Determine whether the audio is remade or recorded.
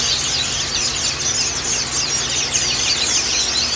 recorded